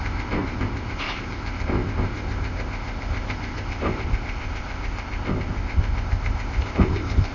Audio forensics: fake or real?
fake